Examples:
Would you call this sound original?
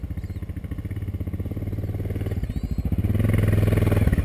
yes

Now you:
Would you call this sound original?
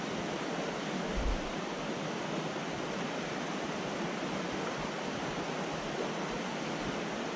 yes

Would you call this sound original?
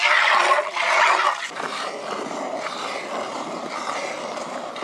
yes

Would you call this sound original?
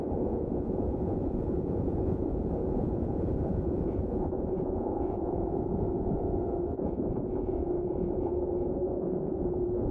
no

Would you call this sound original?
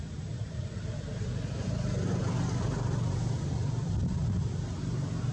yes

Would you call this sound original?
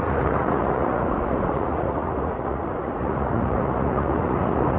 no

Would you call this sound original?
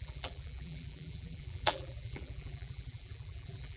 no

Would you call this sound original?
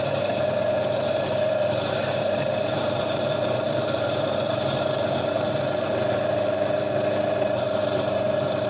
no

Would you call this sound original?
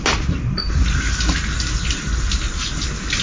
yes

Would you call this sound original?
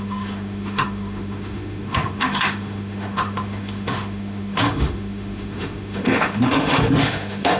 no